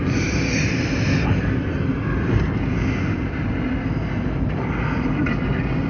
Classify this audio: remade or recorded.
recorded